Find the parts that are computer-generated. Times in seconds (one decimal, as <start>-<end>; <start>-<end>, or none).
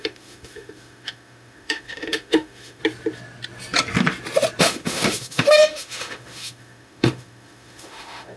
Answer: 0.0-2.8; 4.6-8.4